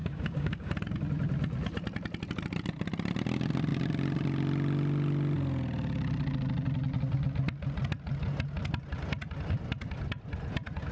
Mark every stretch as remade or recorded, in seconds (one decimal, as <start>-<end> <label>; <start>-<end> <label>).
0.0-0.7 remade; 0.7-10.9 recorded

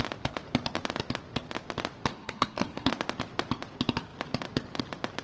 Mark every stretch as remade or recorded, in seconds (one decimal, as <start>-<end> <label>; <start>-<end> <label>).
0.0-2.1 recorded; 2.1-2.9 remade; 2.9-5.2 recorded

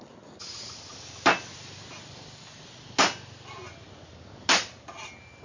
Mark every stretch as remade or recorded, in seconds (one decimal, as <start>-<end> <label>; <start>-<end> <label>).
0.0-5.4 recorded

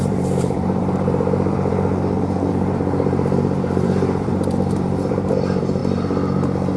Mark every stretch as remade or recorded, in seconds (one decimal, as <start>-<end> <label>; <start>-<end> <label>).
0.0-1.7 remade; 1.7-2.5 recorded; 2.5-5.8 remade; 5.8-6.8 recorded

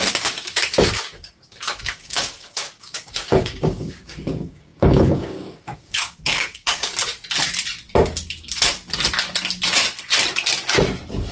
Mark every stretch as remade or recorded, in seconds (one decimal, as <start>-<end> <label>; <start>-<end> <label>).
0.0-6.9 remade; 6.9-11.3 recorded

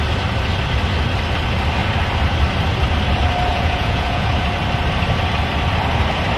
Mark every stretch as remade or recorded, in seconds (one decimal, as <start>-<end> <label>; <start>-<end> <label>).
0.0-3.5 recorded; 3.5-4.3 remade; 4.3-6.4 recorded

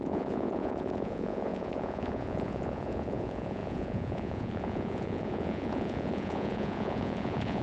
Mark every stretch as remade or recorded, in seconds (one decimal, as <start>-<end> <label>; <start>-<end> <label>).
0.0-7.6 remade

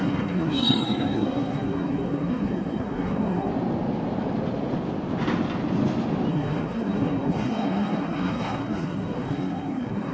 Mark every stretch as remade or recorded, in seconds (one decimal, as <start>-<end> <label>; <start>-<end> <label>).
0.0-3.5 remade; 3.5-6.3 recorded; 6.3-10.1 remade